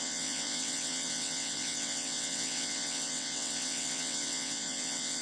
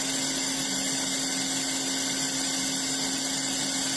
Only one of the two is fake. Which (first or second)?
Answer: first